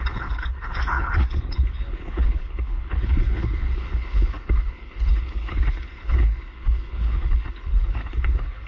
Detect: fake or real fake